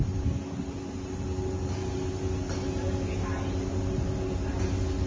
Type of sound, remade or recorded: recorded